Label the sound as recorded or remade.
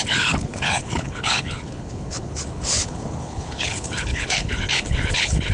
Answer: remade